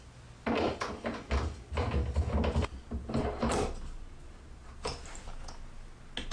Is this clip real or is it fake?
real